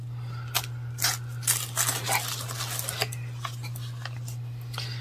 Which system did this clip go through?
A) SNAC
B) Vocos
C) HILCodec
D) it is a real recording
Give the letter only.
D